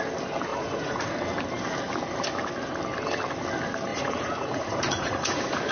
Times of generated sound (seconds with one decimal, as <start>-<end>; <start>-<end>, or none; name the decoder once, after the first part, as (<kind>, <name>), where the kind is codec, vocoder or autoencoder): 0.5-1.1 (vocoder, Vocos); 3.9-5.7